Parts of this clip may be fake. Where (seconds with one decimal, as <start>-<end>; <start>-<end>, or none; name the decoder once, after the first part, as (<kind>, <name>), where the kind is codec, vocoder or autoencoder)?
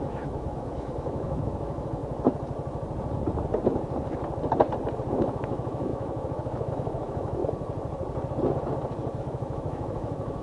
0.0-2.0 (autoencoder, DAC-VAE); 5.1-7.4; 9.2-10.4